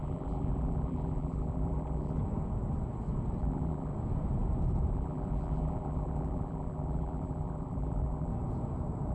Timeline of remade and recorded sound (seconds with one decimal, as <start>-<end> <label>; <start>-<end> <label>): 0.0-2.2 remade; 2.2-3.4 recorded; 3.4-3.9 remade; 3.9-4.9 recorded; 4.9-8.3 remade; 8.3-9.1 recorded